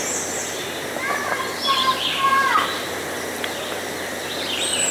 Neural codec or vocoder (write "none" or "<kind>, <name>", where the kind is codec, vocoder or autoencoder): none